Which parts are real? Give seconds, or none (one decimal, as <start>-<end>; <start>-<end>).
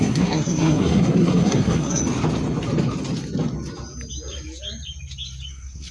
2.0-5.5